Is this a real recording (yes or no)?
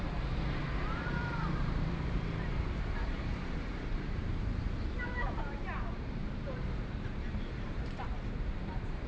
no